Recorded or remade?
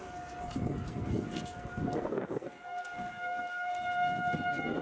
remade